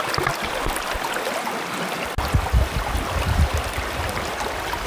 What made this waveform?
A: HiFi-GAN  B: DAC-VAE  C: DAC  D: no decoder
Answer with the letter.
D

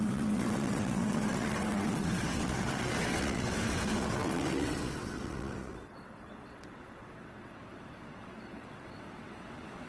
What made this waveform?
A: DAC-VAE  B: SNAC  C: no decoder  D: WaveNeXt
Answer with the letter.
D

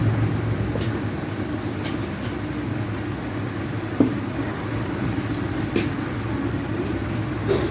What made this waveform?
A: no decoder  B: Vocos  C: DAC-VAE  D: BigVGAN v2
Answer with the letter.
A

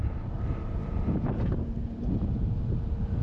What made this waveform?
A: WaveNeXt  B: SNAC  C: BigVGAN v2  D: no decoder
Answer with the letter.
C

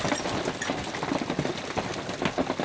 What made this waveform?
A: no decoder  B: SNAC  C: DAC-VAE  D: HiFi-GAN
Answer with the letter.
A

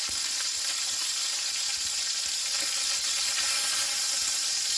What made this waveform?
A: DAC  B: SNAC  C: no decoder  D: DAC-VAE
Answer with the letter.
C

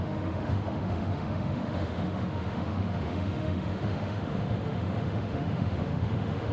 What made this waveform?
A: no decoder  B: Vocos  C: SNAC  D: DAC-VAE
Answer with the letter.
D